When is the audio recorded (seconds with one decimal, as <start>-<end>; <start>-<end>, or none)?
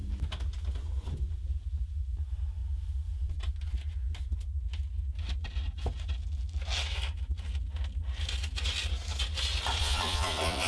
0.0-9.8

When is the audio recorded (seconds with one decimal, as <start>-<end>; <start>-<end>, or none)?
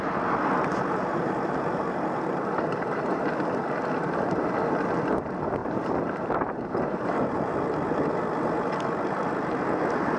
0.0-0.7; 3.2-5.6; 7.1-10.2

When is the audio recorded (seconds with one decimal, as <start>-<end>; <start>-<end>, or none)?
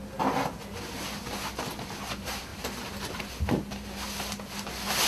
0.0-5.1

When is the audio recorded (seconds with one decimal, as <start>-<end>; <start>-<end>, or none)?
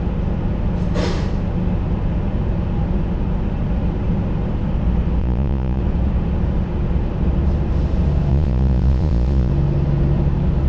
0.0-5.2; 5.8-8.3; 9.5-10.7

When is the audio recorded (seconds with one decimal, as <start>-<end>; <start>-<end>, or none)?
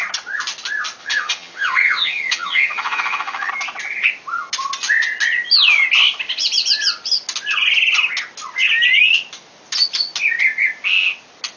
0.0-1.0; 3.5-11.6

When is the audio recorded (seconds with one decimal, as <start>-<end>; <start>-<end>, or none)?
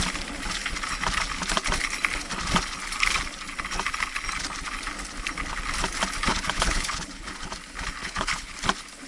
0.0-6.3; 7.3-8.0; 8.5-9.1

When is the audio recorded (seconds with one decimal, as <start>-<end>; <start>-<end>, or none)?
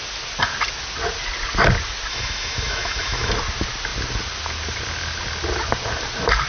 0.0-2.1; 3.3-6.5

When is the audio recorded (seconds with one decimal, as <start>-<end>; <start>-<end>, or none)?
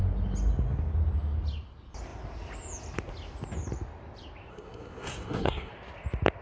0.0-4.5; 5.7-6.4